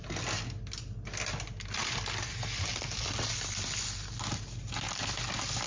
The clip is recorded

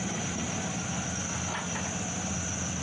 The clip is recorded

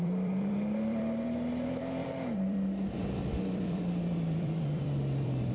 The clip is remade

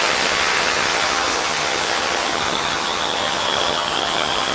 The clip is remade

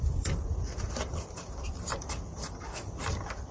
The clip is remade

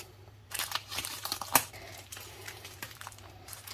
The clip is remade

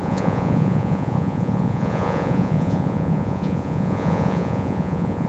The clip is remade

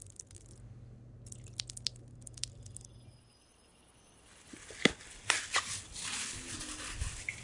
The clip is recorded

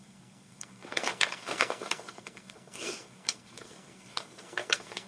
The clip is remade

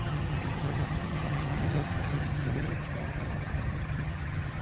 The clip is remade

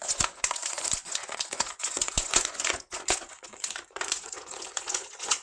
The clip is remade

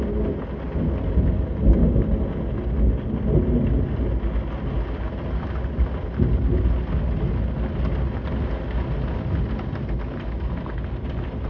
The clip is recorded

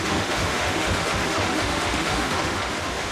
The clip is remade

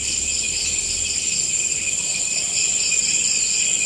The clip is recorded